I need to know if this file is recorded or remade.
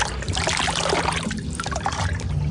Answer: recorded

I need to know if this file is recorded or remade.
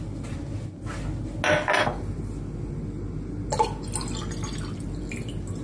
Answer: recorded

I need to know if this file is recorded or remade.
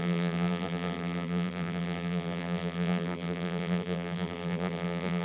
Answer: remade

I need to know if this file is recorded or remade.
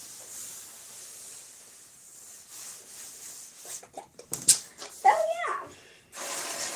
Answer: recorded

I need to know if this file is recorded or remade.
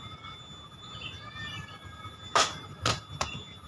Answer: recorded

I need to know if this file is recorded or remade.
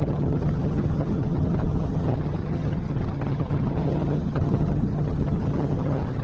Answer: remade